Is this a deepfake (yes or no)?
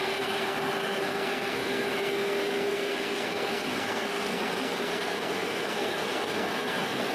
yes